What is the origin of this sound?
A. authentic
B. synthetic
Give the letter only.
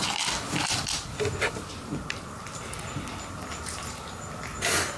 A